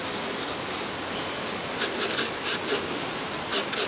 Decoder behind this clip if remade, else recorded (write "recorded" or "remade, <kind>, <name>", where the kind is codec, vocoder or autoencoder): recorded